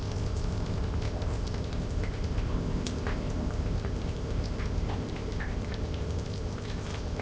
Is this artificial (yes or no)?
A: yes